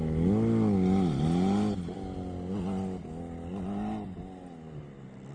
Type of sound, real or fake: real